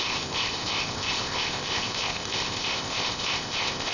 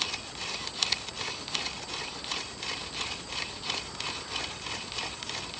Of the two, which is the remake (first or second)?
first